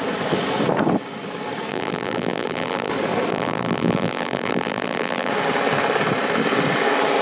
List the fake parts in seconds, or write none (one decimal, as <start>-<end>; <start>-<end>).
1.7-2.9; 3.3-5.3